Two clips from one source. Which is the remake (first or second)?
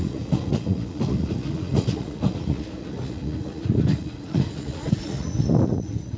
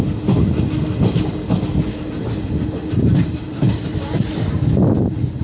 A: first